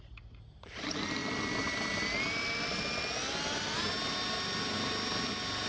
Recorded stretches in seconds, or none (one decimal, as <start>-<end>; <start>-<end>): 0.0-5.7